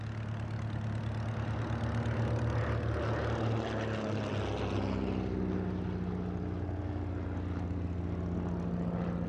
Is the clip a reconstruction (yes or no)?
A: no